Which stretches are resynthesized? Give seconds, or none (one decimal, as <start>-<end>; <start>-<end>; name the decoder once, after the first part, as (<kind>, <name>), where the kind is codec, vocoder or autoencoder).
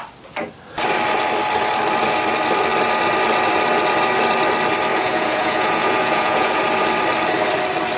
4.9-6.6 (vocoder, Vocos)